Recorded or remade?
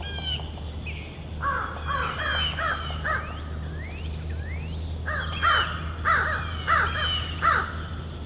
recorded